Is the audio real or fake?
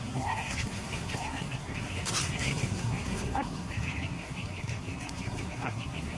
fake